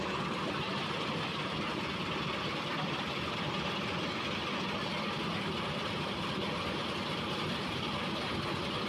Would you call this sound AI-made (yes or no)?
no